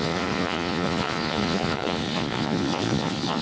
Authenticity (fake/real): fake